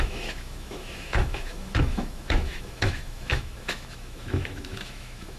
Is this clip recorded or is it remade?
remade